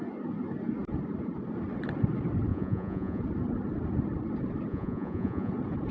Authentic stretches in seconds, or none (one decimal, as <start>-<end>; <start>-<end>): 0.0-2.5; 3.2-4.7; 5.5-5.9